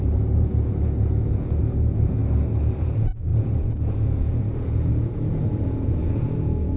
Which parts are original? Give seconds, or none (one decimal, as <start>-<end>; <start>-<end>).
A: 2.2-2.8